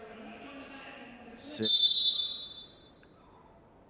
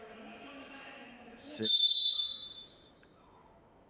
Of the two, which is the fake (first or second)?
second